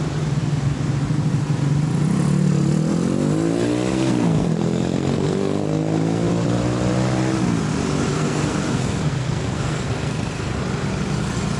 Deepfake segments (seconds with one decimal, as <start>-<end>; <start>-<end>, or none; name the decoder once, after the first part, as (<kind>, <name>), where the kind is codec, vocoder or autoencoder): 3.9-6.3 (codec, SNAC); 8.1-10.6